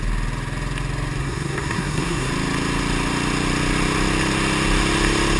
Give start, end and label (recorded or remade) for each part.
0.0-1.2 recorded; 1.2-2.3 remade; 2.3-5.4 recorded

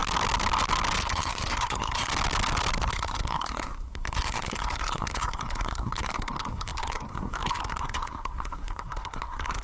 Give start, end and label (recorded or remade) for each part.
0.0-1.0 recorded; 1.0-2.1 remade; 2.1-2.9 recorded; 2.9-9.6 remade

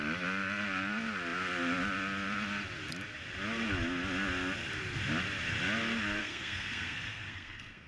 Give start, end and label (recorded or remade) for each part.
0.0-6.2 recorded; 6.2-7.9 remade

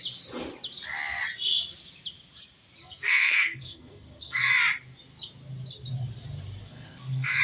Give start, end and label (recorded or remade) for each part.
0.0-2.8 recorded; 2.8-4.5 remade; 4.5-6.6 recorded; 6.6-7.4 remade